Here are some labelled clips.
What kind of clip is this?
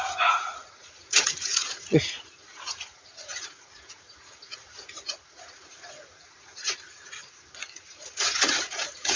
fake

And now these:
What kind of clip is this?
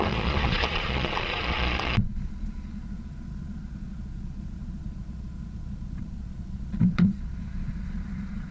fake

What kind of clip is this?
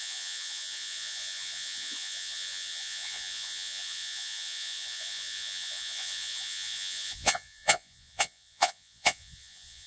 fake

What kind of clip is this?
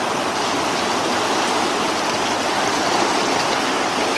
real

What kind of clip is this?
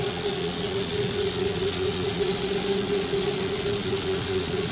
fake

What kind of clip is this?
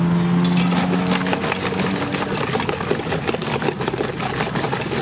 real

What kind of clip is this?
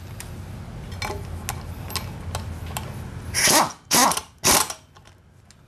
real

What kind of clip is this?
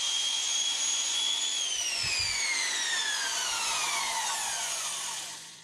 fake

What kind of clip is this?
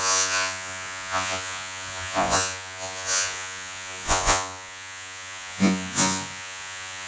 fake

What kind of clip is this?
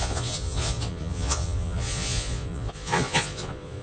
fake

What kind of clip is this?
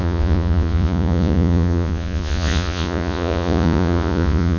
fake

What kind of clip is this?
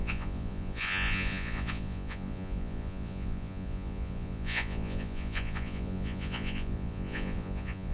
fake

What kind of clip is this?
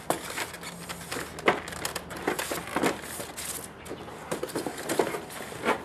real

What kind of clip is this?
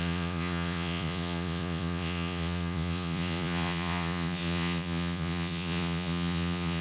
fake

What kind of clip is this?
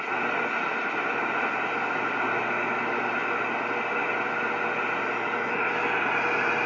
real